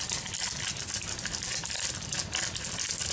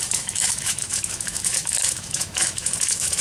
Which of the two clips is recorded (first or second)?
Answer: first